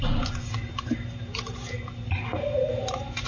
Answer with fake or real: real